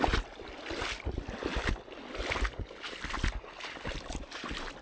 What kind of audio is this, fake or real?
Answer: real